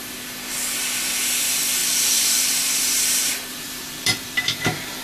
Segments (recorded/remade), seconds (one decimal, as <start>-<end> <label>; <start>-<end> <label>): 0.0-1.8 recorded; 1.8-5.0 remade